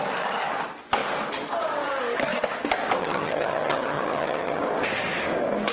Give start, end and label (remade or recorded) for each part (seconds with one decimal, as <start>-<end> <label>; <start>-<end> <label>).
0.0-3.0 recorded; 3.0-4.6 remade; 4.6-5.7 recorded